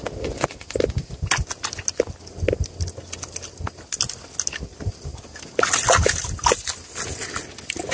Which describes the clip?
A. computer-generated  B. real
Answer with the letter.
B